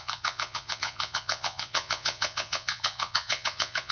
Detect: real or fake fake